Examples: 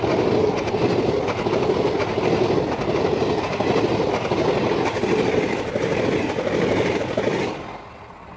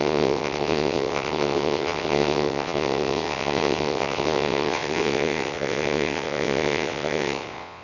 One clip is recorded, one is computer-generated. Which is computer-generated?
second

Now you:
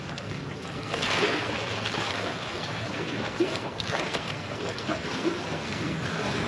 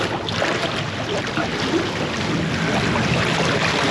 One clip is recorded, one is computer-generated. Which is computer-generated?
first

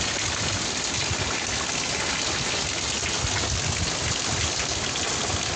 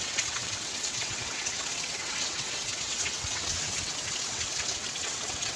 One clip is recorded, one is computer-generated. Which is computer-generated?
second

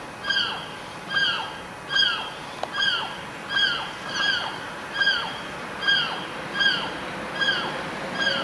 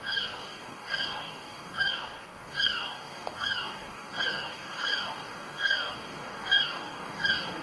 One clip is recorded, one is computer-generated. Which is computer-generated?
second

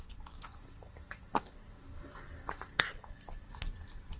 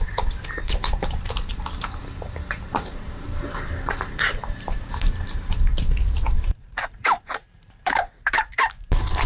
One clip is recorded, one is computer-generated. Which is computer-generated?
second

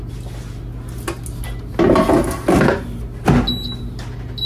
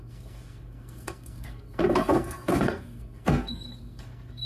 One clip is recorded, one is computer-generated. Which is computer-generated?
second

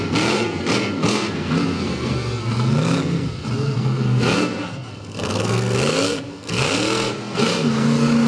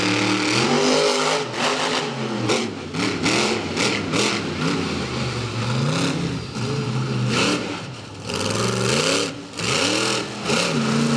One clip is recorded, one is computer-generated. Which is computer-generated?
first